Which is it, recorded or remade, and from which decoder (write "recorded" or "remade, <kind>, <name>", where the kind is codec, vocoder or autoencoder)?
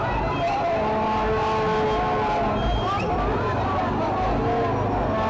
recorded